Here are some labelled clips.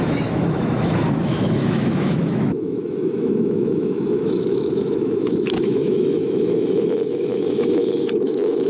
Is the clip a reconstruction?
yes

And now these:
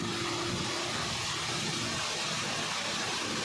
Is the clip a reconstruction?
no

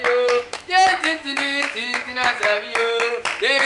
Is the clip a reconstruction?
yes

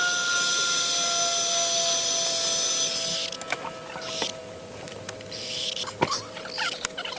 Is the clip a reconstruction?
no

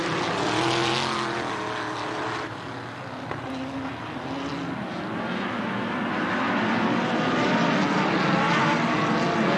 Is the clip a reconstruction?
no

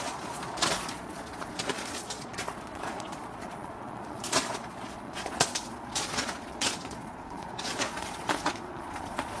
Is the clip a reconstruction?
yes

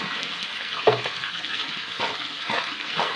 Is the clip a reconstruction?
yes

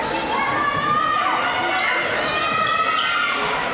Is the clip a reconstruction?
no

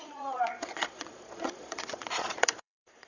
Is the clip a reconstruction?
yes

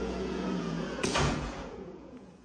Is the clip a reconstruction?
yes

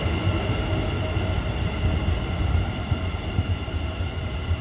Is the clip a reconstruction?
yes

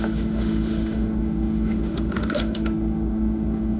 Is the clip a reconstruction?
yes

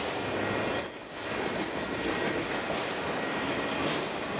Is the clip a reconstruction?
no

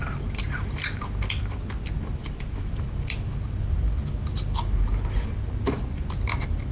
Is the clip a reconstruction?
no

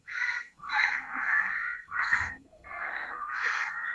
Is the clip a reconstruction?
yes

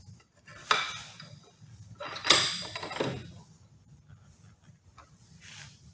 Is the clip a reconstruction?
no